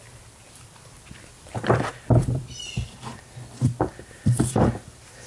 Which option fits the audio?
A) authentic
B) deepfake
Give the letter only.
B